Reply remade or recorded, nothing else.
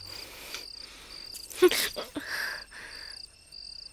recorded